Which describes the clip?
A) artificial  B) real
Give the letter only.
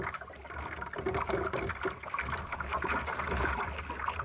B